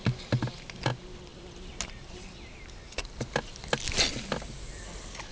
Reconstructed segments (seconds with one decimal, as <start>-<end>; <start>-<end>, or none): none